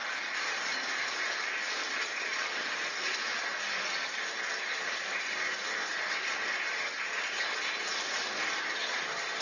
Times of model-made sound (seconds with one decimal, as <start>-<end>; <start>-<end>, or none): none